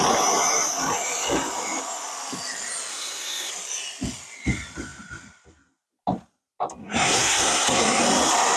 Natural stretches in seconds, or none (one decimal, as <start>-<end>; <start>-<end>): 0.0-2.9; 3.5-6.8; 8.0-8.6